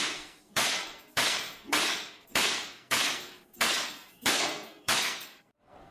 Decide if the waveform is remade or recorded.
remade